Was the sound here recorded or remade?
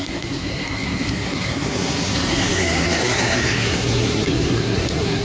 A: remade